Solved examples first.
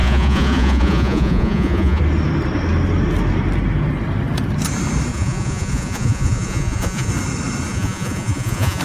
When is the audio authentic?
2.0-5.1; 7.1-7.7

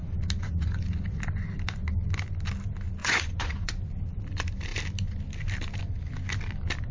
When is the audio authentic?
0.0-3.0; 3.8-6.9

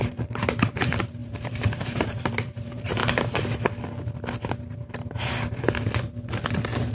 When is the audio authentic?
3.0-6.9

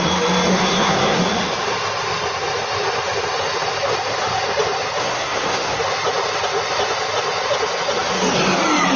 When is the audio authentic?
0.0-0.5; 1.2-5.0; 5.8-9.0

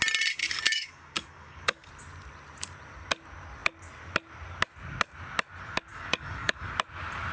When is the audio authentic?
0.0-0.4; 1.9-5.9; 6.7-7.3